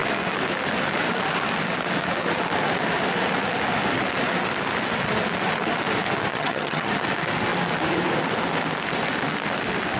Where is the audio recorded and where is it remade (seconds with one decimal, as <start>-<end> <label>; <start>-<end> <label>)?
0.0-6.3 recorded; 6.3-6.9 remade; 6.9-10.0 recorded